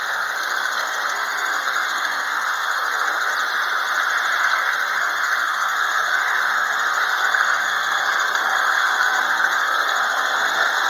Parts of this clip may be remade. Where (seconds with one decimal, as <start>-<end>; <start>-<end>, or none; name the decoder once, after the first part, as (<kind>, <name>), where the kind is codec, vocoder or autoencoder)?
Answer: 0.0-3.3 (codec, SNAC); 4.4-10.9